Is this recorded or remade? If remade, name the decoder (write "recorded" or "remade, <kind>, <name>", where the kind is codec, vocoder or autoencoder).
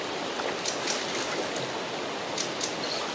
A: recorded